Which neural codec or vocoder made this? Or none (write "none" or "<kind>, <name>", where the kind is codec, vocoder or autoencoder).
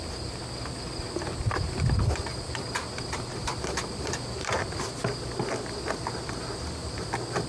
none